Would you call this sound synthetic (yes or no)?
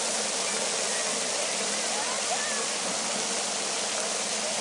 no